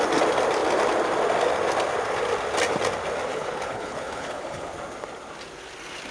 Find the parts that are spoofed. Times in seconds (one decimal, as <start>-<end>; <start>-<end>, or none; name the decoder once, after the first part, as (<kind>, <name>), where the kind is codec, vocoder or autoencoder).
3.3-4.7 (codec, HILCodec)